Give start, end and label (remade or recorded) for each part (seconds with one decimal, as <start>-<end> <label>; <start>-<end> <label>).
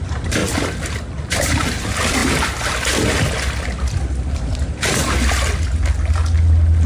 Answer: 0.0-0.4 remade; 0.4-1.3 recorded; 1.3-2.2 remade; 2.2-4.3 recorded; 4.3-5.0 remade; 5.0-6.9 recorded